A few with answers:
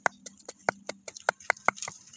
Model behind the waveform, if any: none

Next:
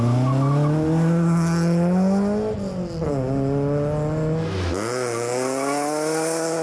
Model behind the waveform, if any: none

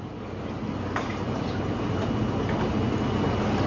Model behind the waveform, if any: none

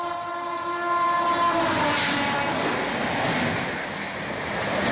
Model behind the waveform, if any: none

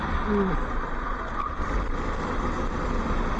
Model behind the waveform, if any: none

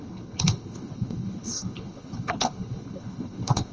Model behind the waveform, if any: codec, HILCodec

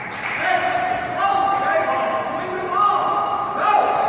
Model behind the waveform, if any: none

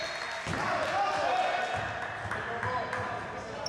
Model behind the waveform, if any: none